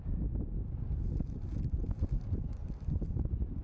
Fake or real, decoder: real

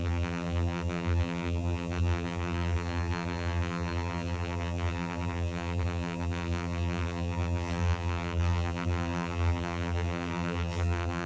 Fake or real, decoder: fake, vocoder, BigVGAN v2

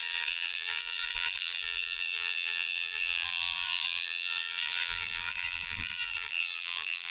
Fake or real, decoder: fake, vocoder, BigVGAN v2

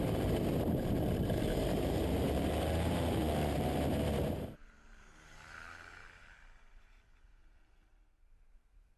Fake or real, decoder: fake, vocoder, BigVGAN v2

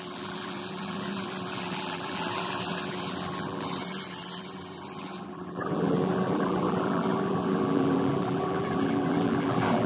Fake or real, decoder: fake, vocoder, BigVGAN v2